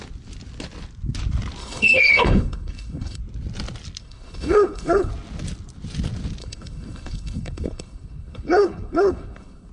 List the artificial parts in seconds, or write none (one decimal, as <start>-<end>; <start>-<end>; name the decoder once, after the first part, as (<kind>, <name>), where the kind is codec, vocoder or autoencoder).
1.6-3.2 (codec, HILCodec); 4.0-5.1; 6.4-9.7